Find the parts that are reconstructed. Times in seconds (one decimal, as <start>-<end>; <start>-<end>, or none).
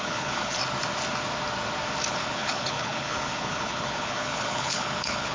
0.0-0.6; 2.1-5.3